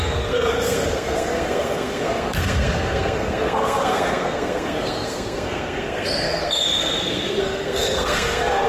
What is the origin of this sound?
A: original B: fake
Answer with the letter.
B